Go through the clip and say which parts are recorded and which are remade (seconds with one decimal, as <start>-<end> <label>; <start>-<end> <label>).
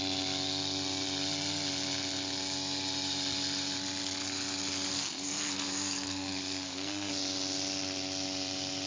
0.0-4.9 recorded; 4.9-7.1 remade; 7.1-8.9 recorded